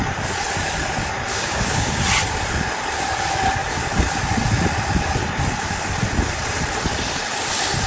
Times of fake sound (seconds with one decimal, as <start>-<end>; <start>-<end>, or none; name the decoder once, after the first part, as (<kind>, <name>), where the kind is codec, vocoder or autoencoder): 1.3-2.0 (codec, DAC)